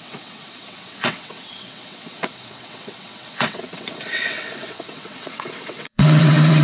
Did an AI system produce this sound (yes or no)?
yes